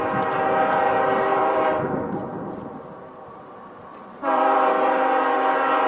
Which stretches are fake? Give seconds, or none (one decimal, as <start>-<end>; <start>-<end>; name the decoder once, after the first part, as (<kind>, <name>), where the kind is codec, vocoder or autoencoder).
1.3-3.3 (vocoder, BigVGAN v2); 3.9-4.7

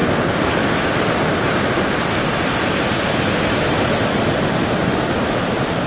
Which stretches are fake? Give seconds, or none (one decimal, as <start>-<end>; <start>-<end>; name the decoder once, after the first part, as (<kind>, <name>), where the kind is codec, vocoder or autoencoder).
0.0-0.5 (vocoder, BigVGAN v2)

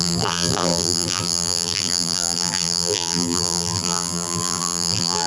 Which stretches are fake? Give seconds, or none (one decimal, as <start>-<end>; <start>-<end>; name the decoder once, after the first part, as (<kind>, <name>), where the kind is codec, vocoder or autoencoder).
0.0-5.3 (vocoder, BigVGAN v2)